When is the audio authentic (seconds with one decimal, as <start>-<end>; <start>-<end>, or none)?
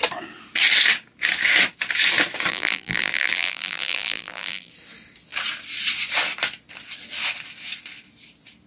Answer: 0.0-2.5; 4.7-8.7